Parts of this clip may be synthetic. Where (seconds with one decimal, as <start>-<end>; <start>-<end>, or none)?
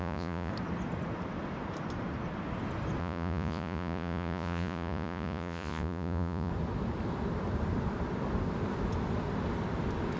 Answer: 0.0-0.5; 3.0-6.5